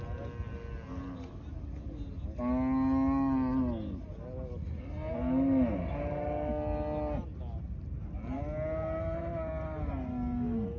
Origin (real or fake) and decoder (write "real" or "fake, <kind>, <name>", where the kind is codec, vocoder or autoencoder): real